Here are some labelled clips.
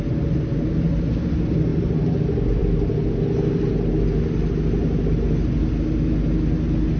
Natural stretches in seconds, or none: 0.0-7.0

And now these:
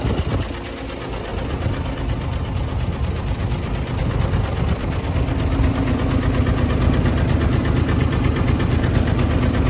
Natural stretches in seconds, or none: 0.0-9.7

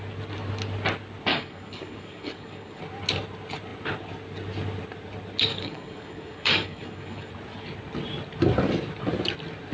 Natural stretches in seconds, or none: 0.0-1.3; 2.8-5.5; 7.3-9.7

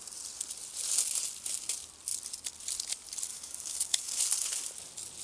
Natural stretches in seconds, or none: 0.0-3.3; 4.2-5.2